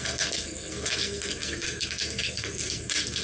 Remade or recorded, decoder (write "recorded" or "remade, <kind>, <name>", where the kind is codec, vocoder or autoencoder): remade, codec, SNAC